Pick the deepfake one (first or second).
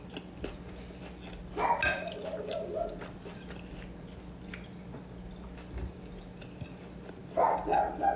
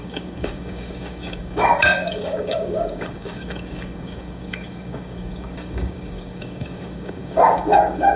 second